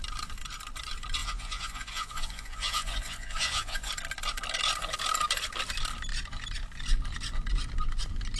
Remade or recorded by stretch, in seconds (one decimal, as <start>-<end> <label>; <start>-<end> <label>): 0.0-1.2 recorded; 1.2-3.9 remade; 3.9-8.4 recorded